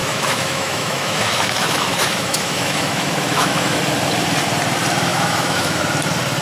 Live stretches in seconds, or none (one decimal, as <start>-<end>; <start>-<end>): 3.8-5.1; 5.8-6.4